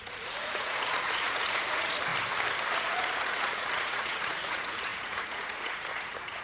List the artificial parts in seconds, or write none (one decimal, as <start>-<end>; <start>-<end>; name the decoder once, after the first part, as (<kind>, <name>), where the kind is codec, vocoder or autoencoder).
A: 0.0-2.1 (vocoder, Vocos); 2.7-6.4